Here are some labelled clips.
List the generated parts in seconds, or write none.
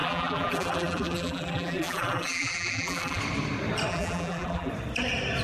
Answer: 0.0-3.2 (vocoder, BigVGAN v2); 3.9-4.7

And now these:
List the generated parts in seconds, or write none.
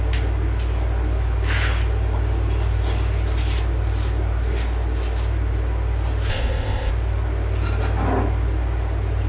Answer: 6.3-6.9 (codec, ZipCodec)